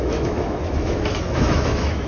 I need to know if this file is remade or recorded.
remade